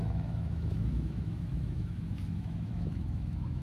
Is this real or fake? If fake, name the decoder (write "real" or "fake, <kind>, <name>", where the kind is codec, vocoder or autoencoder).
fake, autoencoder, DAC-VAE